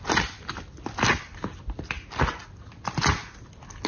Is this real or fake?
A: real